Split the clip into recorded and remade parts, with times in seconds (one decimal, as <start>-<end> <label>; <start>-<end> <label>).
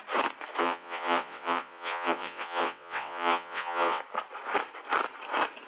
0.0-0.6 recorded; 0.6-4.0 remade; 4.0-5.7 recorded